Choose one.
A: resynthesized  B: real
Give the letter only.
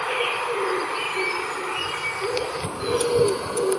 B